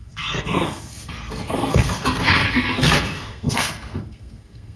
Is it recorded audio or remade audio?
remade